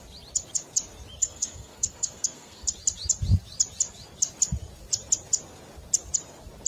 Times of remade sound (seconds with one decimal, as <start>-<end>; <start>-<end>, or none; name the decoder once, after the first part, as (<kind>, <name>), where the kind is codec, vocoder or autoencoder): 1.2-2.7 (codec, SNAC)